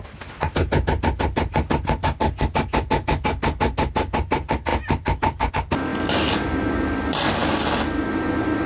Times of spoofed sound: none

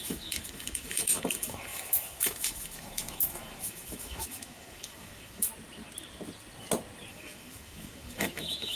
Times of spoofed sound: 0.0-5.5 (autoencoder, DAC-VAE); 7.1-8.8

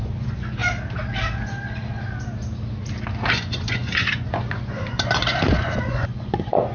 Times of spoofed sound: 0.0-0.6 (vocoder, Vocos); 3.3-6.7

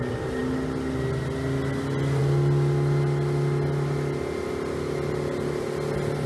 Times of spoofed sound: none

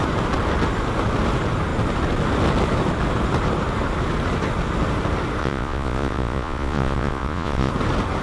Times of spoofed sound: 5.4-7.7 (vocoder, Vocos)

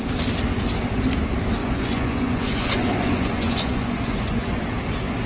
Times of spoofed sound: 1.6-4.6 (vocoder, Vocos)

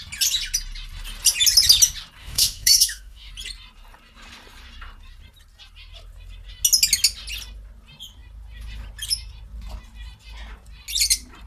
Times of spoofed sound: 2.2-3.3 (autoencoder, DAC-VAE)